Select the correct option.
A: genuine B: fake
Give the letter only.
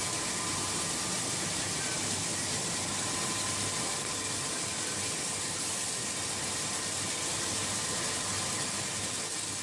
A